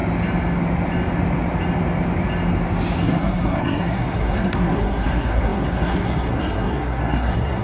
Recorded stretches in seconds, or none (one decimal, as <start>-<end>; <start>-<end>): 0.0-3.0